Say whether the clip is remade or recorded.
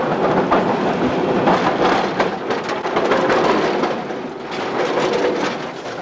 recorded